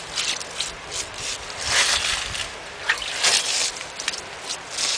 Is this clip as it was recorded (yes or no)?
yes